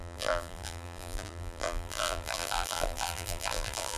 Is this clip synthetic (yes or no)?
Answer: yes